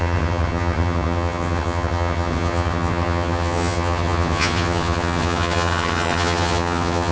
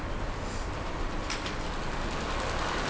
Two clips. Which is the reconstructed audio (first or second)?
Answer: first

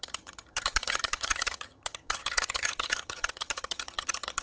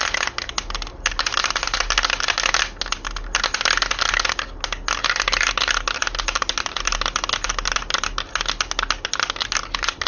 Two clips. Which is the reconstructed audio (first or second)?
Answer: first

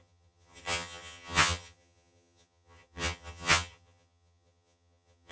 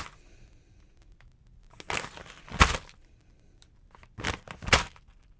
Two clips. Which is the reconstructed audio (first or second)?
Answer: first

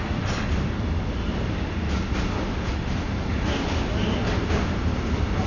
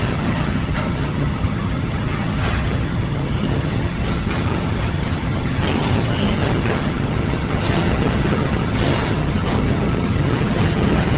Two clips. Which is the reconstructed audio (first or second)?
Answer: second